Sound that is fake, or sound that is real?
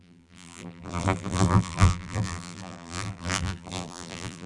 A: fake